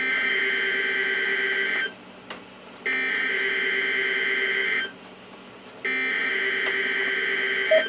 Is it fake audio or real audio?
real